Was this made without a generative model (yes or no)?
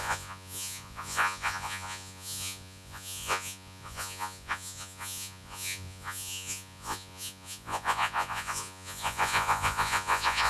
no